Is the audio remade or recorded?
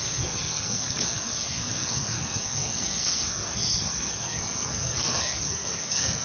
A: remade